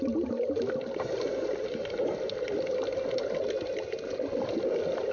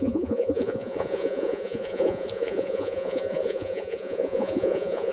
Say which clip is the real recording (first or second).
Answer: first